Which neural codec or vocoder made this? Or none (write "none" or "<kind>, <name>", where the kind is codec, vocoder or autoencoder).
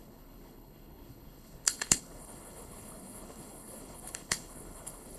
codec, HILCodec